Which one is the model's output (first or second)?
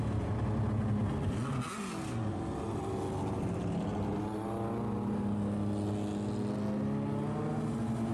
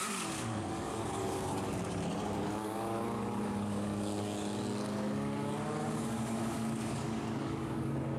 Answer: second